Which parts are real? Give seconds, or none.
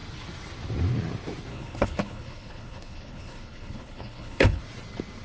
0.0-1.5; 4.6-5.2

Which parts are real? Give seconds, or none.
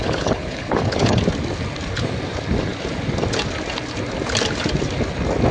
1.2-5.5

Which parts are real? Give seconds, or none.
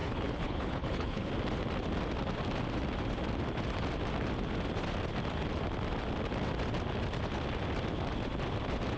1.3-9.0